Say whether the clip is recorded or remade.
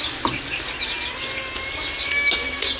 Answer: recorded